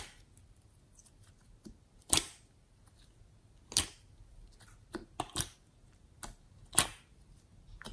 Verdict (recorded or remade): recorded